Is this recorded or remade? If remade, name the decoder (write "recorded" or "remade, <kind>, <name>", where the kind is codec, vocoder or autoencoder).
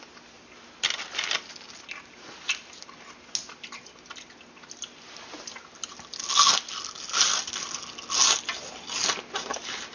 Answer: recorded